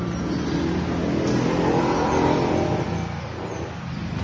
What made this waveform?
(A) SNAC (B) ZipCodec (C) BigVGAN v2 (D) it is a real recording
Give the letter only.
D